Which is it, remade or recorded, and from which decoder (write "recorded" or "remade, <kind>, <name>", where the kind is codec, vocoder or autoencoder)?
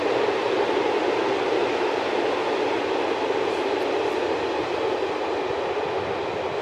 recorded